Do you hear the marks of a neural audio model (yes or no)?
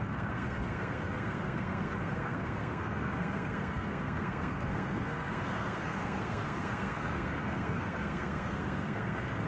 yes